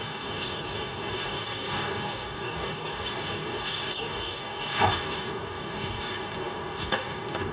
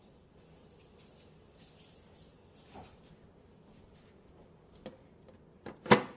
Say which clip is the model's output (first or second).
first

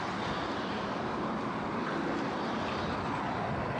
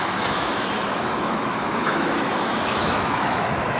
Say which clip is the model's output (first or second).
second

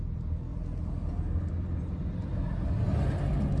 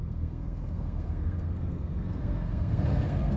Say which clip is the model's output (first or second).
second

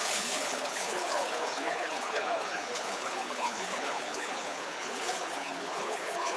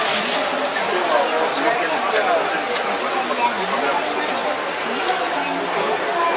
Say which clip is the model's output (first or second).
first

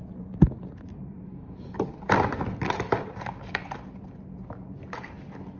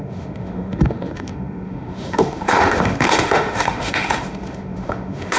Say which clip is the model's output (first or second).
second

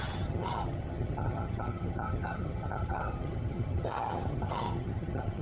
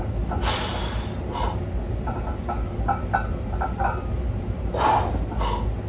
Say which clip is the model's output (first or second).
first